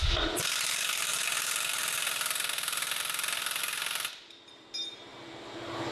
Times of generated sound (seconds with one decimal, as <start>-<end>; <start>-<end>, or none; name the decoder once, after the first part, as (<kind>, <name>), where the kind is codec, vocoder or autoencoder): 0.0-5.9 (vocoder, BigVGAN v2)